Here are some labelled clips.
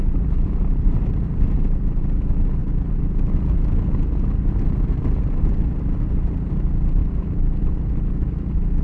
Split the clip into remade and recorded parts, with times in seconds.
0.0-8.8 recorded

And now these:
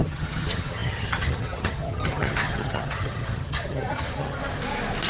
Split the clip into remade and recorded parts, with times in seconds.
0.0-4.4 remade; 4.4-5.1 recorded

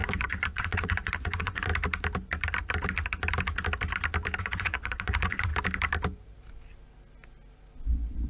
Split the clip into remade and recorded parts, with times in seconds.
0.0-1.7 remade; 1.7-4.4 recorded; 4.4-5.5 remade; 5.5-8.3 recorded

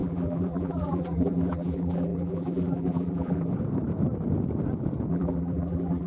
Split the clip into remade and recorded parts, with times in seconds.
0.0-3.5 remade; 3.5-5.1 recorded; 5.1-6.1 remade